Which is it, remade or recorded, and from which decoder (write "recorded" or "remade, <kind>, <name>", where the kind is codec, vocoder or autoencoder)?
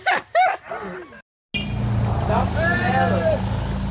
recorded